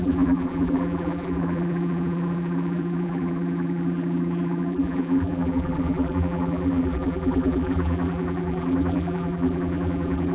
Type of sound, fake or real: fake